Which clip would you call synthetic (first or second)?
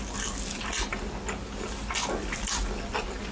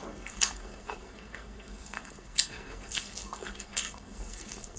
second